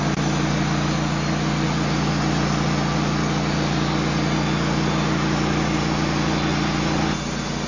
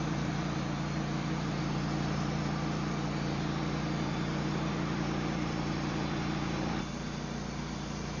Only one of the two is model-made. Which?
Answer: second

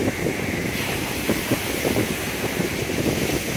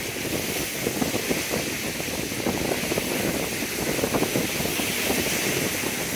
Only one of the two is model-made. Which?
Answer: first